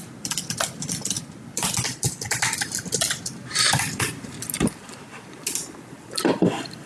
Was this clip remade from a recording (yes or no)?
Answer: no